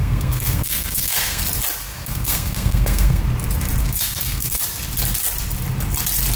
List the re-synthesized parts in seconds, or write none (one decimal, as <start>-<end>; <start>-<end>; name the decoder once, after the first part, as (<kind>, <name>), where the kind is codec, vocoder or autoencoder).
0.0-1.4 (codec, SNAC); 1.9-3.2; 3.8-4.6